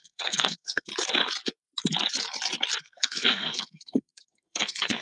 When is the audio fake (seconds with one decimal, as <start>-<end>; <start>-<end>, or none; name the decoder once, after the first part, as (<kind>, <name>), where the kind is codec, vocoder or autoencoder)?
0.0-0.9 (codec, SNAC); 2.8-5.0